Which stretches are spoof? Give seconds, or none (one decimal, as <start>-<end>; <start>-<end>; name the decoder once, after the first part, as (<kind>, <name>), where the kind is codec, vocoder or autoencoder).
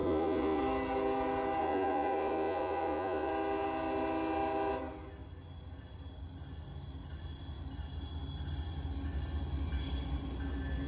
0.0-0.6 (vocoder, Vocos); 1.6-3.3